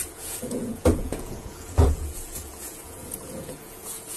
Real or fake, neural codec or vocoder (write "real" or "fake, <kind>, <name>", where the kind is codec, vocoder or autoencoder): fake, vocoder, Vocos